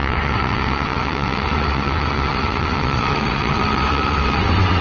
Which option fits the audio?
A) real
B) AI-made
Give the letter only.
B